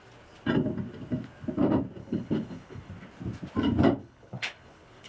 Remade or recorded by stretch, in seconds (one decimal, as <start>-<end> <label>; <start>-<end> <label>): 0.0-2.0 recorded; 2.0-2.9 remade; 2.9-4.0 recorded; 4.0-5.1 remade